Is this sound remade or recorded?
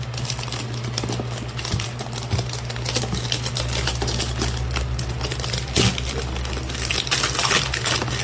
recorded